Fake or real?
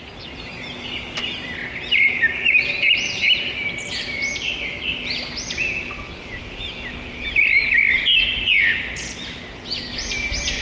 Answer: real